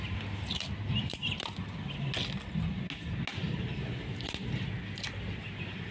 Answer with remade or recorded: recorded